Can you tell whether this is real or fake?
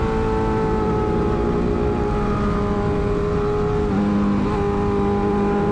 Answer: real